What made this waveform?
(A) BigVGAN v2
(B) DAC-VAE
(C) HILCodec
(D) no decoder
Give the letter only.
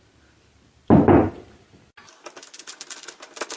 D